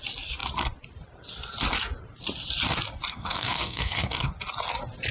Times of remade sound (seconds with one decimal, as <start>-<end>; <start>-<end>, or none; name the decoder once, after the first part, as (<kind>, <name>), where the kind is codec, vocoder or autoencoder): 3.1-4.3 (codec, SNAC)